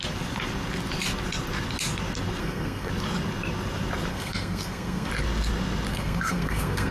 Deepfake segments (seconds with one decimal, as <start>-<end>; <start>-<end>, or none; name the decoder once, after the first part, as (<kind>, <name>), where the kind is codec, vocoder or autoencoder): 2.4-2.9 (codec, SNAC); 4.1-5.1; 5.9-6.9